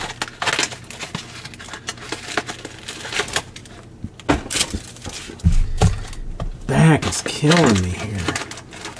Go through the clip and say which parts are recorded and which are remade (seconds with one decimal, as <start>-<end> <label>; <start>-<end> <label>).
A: 0.0-9.0 recorded